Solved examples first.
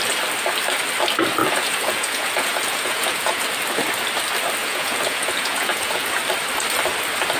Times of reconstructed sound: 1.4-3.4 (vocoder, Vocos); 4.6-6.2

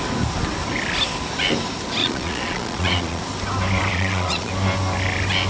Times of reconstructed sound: 2.0-3.2 (vocoder, Vocos); 3.9-4.5

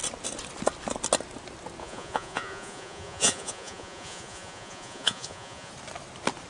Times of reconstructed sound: 1.8-5.7 (vocoder, Vocos)

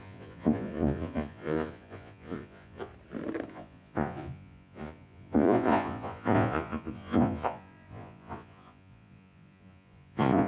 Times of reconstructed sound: 0.0-2.9 (vocoder, Vocos); 3.5-10.5

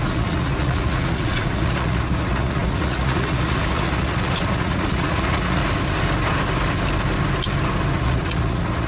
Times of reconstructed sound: 0.0-5.6 (vocoder, Vocos); 8.0-8.9

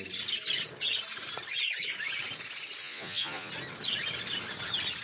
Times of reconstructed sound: 2.8-3.5 (vocoder, Vocos)

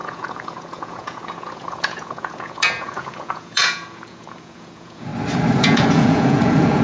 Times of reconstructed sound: 0.0-5.1 (vocoder, Vocos); 5.6-6.8